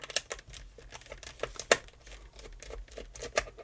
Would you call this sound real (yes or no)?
yes